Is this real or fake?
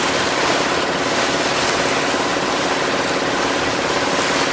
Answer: real